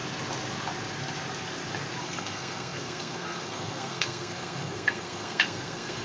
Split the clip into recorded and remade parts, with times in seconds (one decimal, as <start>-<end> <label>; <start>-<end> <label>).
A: 0.0-2.0 recorded; 2.0-6.0 remade